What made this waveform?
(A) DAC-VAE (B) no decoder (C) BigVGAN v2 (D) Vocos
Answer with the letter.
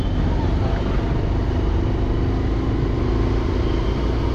B